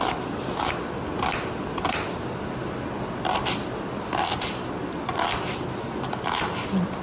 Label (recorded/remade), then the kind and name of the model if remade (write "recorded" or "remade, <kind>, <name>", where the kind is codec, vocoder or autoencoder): recorded